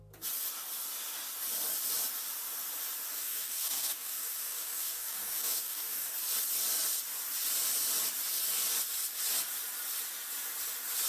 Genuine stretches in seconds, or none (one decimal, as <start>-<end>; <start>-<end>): 0.0-3.1; 6.1-11.1